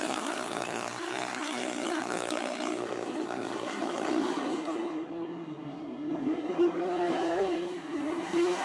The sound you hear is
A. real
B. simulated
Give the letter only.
B